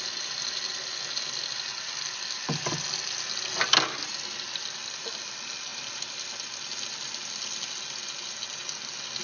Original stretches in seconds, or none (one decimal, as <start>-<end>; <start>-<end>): 0.0-9.2